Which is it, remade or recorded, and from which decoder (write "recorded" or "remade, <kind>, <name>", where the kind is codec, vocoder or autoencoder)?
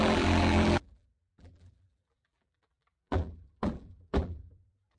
remade, vocoder, BigVGAN v2